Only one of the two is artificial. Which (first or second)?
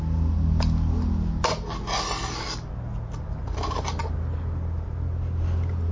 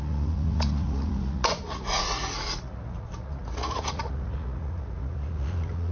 second